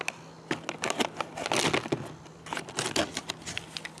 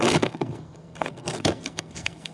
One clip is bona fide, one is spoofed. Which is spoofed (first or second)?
second